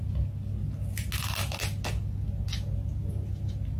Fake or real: real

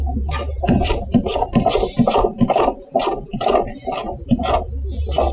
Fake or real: fake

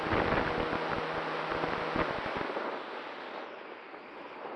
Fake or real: real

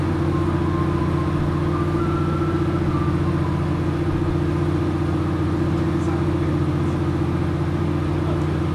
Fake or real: real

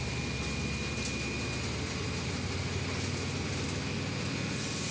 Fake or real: real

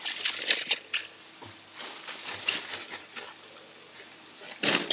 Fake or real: fake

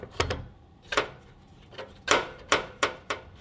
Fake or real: fake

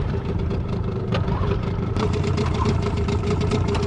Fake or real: fake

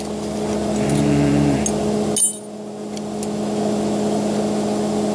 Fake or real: real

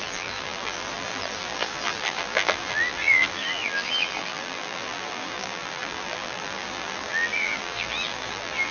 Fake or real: fake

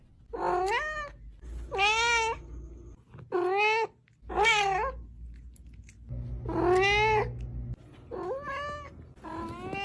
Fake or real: real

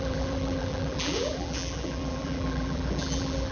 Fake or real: fake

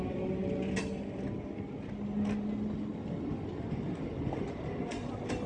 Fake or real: real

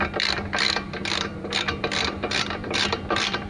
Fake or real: fake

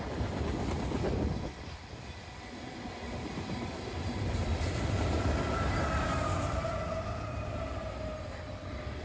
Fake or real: fake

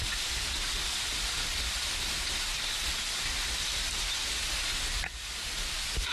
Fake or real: real